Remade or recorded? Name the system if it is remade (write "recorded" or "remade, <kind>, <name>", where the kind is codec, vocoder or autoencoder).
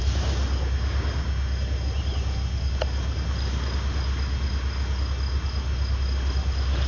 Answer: recorded